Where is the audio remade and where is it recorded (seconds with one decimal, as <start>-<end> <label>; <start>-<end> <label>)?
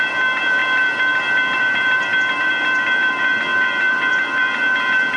0.0-5.2 remade